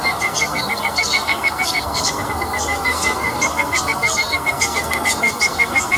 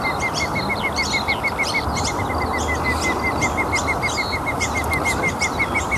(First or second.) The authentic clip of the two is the second